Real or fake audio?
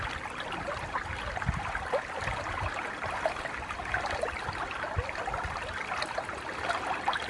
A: real